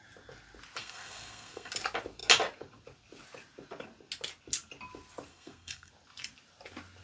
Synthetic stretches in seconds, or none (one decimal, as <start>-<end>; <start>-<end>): 0.8-1.7; 5.3-5.9